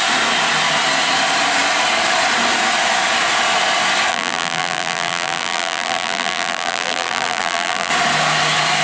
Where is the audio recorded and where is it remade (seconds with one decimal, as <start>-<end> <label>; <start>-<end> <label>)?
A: 0.0-4.1 recorded; 4.1-7.9 remade; 7.9-8.8 recorded

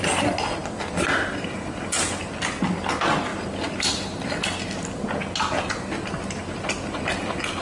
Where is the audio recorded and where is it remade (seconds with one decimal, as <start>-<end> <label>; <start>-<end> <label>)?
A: 0.0-7.6 recorded

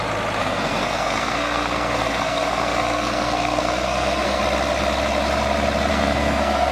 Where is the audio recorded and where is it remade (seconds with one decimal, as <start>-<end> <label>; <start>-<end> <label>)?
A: 0.0-0.4 recorded; 0.4-4.4 remade; 4.4-5.9 recorded; 5.9-6.7 remade

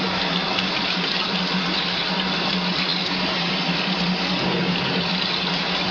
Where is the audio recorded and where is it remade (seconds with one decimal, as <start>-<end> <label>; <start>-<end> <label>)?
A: 0.0-5.9 recorded

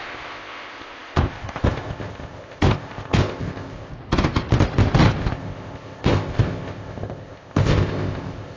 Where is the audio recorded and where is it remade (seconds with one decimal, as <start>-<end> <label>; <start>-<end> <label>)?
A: 0.0-3.9 remade; 3.9-5.2 recorded; 5.2-8.6 remade

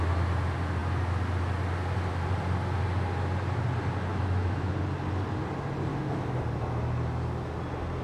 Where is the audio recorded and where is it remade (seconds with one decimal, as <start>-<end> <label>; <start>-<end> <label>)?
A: 0.0-4.1 recorded; 4.1-4.7 remade; 4.7-5.9 recorded; 5.9-6.4 remade; 6.4-8.0 recorded

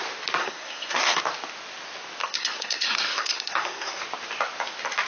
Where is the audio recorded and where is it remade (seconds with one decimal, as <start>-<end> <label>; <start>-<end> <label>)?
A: 0.0-0.4 recorded; 0.4-1.2 remade; 1.2-2.2 recorded; 2.2-4.0 remade; 4.0-5.1 recorded